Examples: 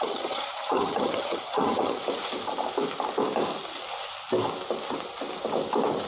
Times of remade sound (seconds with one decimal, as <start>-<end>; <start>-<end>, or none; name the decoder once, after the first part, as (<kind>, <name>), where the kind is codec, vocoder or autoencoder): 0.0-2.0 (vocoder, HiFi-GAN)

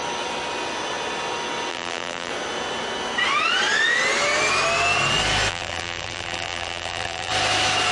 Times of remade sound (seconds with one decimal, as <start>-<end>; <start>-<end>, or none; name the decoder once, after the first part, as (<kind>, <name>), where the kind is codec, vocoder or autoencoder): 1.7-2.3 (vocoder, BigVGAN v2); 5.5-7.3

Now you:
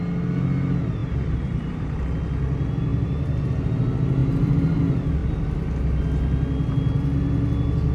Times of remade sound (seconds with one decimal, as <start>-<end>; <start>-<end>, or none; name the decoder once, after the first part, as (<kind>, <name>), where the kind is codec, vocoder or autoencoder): 1.0-2.0 (vocoder, BigVGAN v2); 2.9-3.5; 4.2-4.8

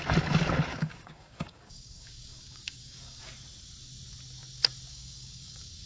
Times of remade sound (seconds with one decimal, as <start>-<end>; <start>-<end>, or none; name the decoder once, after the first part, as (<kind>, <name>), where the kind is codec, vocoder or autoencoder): 0.7-3.3 (codec, DAC); 4.9-5.9